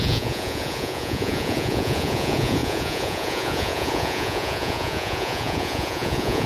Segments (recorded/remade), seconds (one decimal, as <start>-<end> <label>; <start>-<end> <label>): 0.0-6.5 remade